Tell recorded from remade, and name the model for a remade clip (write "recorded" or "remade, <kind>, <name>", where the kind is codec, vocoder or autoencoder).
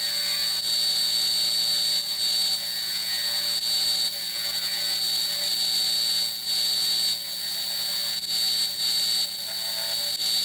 recorded